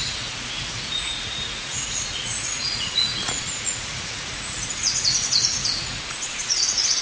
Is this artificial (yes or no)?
yes